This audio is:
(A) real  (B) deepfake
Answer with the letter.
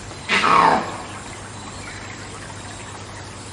A